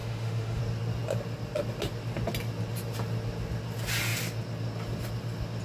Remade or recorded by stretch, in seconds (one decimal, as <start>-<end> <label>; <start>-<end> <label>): 0.0-0.6 remade; 0.6-5.6 recorded